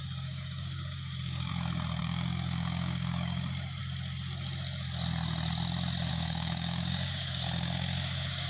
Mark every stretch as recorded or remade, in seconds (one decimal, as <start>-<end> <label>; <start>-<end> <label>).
0.0-1.5 remade; 1.5-2.0 recorded; 2.0-3.8 remade; 3.8-6.1 recorded; 6.1-8.5 remade